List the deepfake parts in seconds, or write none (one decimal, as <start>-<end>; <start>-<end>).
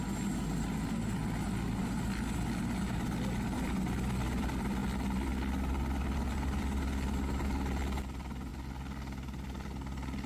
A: none